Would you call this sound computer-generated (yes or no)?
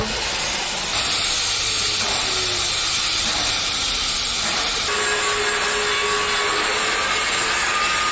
no